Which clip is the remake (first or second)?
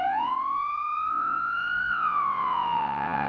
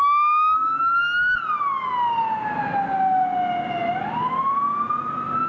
first